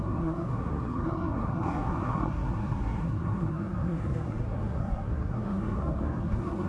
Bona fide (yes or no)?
no